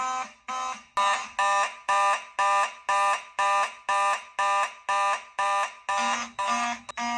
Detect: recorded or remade recorded